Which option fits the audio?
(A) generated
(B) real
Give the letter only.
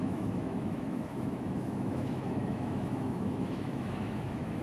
A